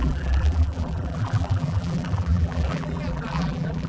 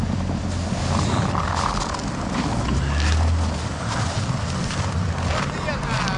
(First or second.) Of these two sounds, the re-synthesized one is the first